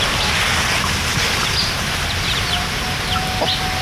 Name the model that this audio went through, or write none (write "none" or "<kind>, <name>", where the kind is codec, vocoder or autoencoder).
none